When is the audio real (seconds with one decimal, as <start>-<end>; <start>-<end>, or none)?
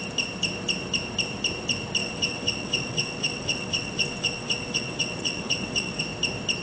0.0-2.0; 6.0-6.6